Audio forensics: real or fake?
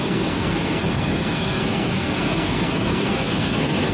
fake